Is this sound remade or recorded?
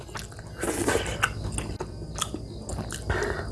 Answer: recorded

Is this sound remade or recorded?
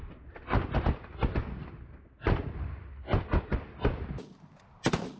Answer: recorded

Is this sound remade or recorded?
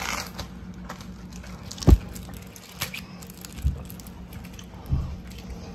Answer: recorded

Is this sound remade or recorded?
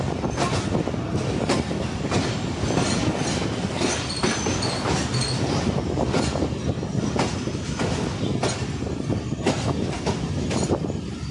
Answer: recorded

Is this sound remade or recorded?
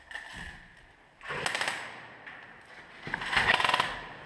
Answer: recorded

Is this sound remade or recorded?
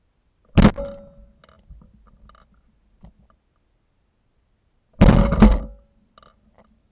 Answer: recorded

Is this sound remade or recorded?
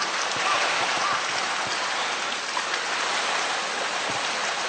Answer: recorded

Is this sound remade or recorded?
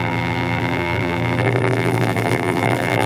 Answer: remade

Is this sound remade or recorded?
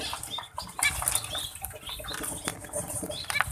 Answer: recorded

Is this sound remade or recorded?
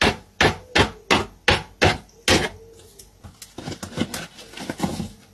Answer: recorded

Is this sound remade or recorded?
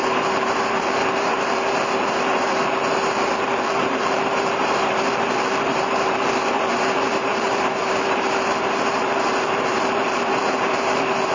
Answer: remade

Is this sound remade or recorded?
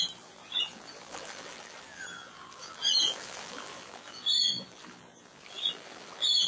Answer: remade